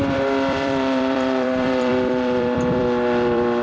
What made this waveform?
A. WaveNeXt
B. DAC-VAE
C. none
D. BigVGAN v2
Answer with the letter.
D